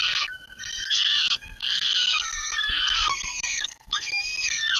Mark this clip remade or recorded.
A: remade